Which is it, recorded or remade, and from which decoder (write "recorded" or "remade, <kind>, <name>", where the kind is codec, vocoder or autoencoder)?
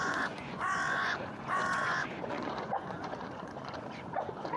remade, vocoder, Vocos